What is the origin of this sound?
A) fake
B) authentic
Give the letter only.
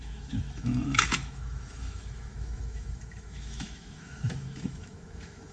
A